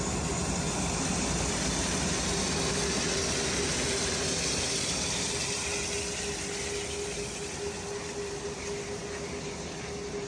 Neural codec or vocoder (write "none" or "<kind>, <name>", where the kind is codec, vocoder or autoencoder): none